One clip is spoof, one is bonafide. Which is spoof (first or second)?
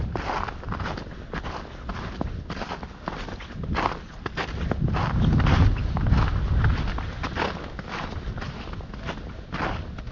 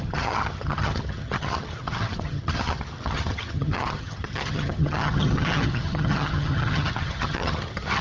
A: second